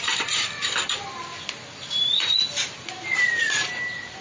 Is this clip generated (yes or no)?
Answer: no